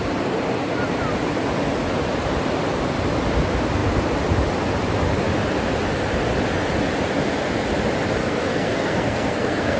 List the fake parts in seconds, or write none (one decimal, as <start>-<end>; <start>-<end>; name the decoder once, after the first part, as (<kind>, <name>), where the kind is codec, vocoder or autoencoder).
8.2-9.8 (codec, SNAC)

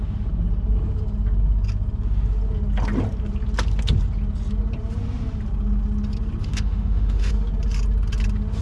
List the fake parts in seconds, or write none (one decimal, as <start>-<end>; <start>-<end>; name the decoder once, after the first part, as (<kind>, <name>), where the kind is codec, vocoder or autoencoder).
6.4-7.3 (autoencoder, DAC-VAE)

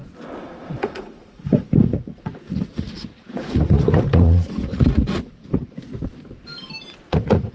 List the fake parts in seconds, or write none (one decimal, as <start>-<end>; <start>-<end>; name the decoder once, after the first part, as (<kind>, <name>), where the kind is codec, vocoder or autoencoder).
0.8-5.9 (vocoder, Vocos); 7.1-7.5

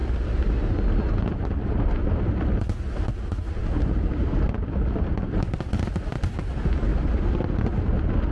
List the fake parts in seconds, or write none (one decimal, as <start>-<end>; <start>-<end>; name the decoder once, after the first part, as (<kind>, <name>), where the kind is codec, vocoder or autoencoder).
none

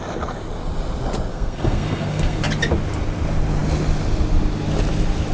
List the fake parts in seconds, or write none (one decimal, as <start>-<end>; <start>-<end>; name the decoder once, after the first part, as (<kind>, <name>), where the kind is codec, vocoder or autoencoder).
1.3-2.4 (codec, SNAC)

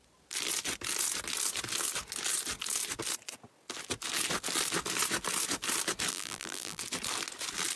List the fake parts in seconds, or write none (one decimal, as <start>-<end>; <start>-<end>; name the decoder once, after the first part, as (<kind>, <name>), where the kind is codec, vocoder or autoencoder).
6.1-6.8 (vocoder, BigVGAN v2)

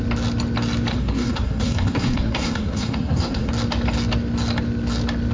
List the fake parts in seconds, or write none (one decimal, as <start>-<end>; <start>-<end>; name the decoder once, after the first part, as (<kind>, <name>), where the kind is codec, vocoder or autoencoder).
0.9-3.5 (codec, SNAC)

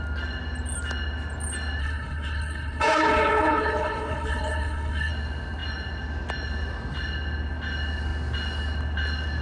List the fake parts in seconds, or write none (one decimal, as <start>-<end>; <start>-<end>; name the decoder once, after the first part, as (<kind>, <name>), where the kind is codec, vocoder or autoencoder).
1.8-5.1 (codec, HILCodec)